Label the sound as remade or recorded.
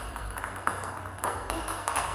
remade